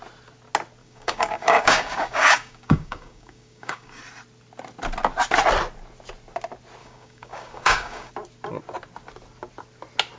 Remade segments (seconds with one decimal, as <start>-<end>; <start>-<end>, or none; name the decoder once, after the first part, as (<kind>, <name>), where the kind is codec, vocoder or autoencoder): 0.8-4.0 (codec, DAC); 6.8-8.1